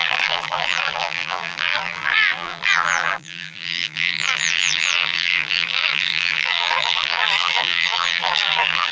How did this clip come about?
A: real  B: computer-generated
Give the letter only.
B